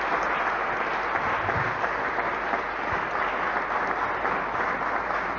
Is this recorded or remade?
recorded